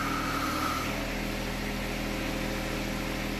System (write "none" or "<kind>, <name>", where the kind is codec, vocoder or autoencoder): none